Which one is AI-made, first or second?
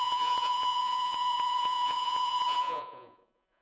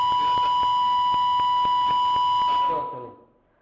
first